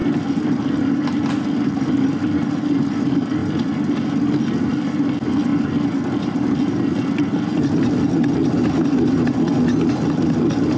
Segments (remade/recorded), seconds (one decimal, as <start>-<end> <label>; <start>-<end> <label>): 0.0-10.8 recorded

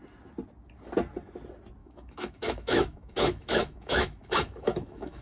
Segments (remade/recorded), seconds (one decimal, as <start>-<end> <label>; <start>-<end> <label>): 0.0-1.8 recorded; 1.8-5.2 remade

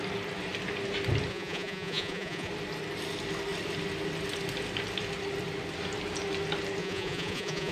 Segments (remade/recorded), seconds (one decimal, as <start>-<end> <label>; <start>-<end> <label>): 0.0-1.3 recorded; 1.3-2.5 remade; 2.5-6.8 recorded; 6.8-7.7 remade

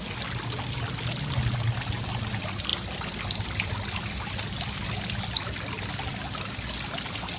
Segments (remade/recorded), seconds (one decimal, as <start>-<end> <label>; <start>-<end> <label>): 0.0-7.4 recorded

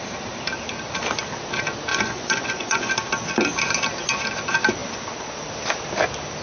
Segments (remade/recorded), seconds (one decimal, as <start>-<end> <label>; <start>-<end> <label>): 0.0-1.9 recorded; 1.9-2.9 remade; 2.9-6.4 recorded